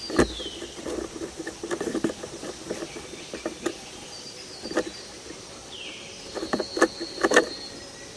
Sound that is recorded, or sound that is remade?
remade